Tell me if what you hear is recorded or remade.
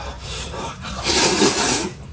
remade